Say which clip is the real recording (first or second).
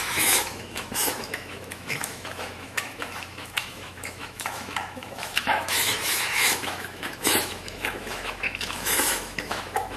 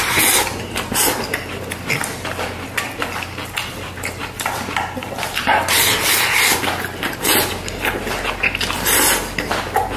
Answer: second